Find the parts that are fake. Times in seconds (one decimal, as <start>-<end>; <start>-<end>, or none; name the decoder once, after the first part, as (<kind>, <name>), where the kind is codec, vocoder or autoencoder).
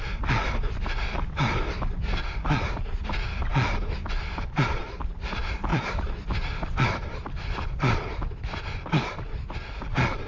3.5-4.8 (vocoder, BigVGAN v2); 5.7-9.9